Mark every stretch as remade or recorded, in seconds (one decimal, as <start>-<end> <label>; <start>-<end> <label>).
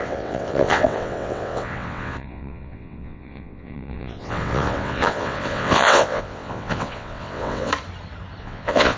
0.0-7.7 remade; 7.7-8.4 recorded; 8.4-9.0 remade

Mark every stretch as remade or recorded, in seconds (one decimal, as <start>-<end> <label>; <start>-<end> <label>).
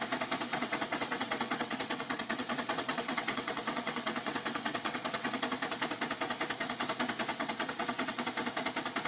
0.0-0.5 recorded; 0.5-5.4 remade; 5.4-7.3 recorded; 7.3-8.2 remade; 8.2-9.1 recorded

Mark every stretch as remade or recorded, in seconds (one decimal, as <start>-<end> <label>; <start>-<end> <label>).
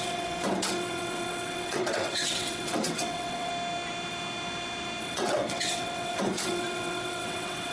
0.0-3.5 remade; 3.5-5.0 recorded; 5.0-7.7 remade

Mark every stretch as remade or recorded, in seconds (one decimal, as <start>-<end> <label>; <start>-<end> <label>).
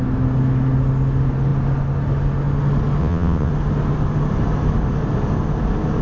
0.0-3.0 recorded; 3.0-3.5 remade; 3.5-6.0 recorded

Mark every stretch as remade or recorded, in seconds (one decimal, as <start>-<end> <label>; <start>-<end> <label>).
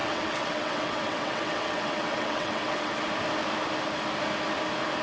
0.0-3.0 remade; 3.0-5.0 recorded